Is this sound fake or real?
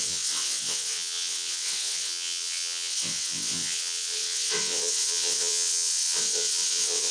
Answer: fake